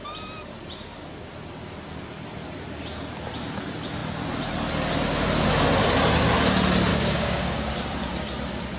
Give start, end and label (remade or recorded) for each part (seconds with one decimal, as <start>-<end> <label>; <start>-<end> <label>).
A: 0.0-6.9 recorded; 6.9-7.7 remade; 7.7-8.8 recorded